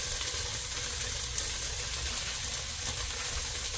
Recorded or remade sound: recorded